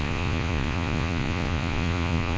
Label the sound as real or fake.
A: fake